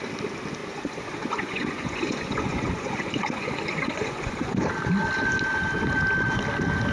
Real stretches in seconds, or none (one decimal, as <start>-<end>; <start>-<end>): 0.0-0.6; 4.7-6.9